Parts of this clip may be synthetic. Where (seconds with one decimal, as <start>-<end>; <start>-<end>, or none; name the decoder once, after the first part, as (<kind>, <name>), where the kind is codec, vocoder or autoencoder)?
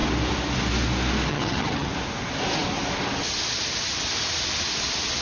1.3-1.9 (vocoder, HiFi-GAN)